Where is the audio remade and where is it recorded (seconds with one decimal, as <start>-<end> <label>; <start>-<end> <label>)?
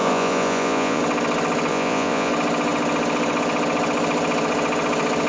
0.0-1.0 remade; 1.0-1.7 recorded; 1.7-2.3 remade; 2.3-5.3 recorded